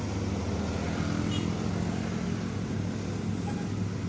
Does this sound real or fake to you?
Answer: real